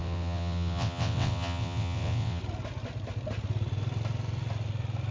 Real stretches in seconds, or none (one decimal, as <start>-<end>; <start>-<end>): 2.4-5.1